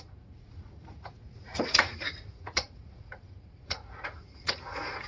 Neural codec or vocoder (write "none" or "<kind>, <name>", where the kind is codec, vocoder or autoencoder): vocoder, Vocos